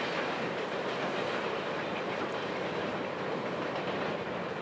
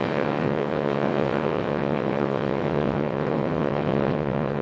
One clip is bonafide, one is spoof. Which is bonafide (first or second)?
first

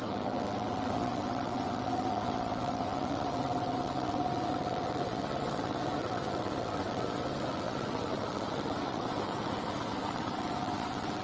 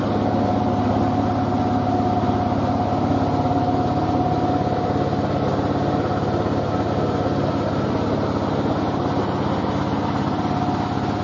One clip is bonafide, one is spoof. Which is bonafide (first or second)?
second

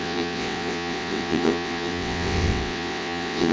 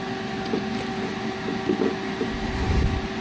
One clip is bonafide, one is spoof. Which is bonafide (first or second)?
second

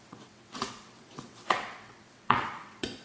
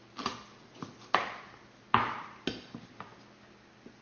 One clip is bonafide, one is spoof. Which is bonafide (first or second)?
second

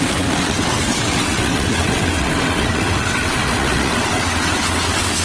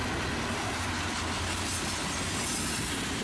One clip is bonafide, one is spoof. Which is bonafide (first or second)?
second